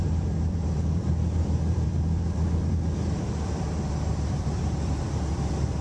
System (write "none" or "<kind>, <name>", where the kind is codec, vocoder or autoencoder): vocoder, BigVGAN v2